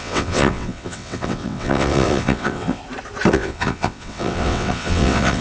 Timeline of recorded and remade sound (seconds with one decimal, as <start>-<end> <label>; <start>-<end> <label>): 0.0-2.8 remade; 2.8-3.3 recorded; 3.3-5.4 remade